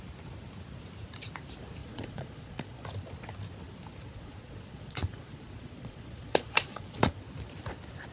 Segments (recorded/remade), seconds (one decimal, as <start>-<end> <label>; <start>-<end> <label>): 0.0-1.8 recorded; 1.8-2.8 remade; 2.8-3.9 recorded; 3.9-7.2 remade; 7.2-8.1 recorded